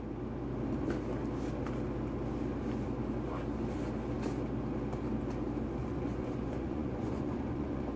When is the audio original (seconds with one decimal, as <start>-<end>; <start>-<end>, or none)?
0.0-5.8